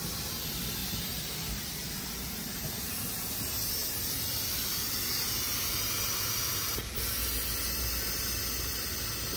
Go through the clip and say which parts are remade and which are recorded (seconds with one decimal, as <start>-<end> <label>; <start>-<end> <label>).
0.0-0.8 recorded; 0.8-2.9 remade; 2.9-9.4 recorded